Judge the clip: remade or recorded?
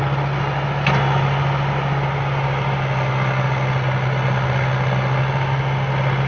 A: recorded